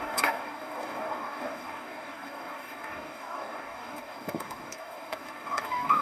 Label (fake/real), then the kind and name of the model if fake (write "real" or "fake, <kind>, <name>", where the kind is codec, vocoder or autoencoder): fake, codec, DAC